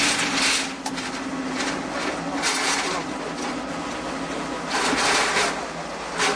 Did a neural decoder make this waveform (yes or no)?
no